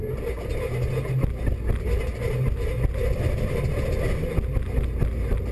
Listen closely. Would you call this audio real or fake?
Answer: real